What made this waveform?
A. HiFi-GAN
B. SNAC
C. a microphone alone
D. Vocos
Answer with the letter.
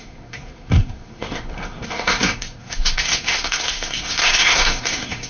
B